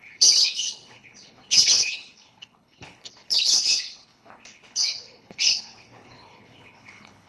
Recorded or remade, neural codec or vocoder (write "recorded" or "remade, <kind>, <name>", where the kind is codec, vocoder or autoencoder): remade, codec, HILCodec